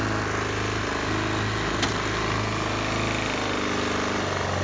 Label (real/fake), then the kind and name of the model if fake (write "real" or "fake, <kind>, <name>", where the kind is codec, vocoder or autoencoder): real